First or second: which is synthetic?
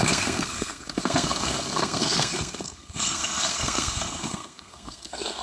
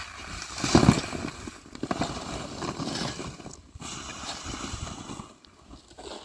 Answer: first